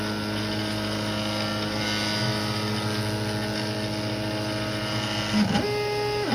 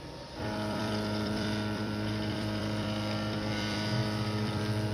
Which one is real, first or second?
first